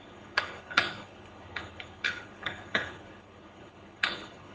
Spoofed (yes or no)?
yes